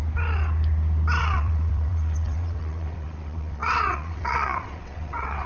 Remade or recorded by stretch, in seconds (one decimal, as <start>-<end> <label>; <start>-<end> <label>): 0.0-1.2 recorded; 1.2-5.5 remade